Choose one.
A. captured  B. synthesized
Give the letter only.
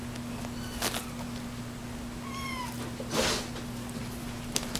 A